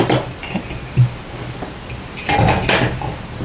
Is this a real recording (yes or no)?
yes